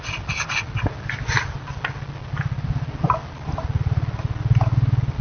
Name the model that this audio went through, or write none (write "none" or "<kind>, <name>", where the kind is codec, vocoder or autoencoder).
none